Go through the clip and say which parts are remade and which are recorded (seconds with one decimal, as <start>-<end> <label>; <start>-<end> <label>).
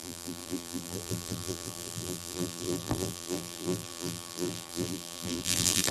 0.0-5.9 remade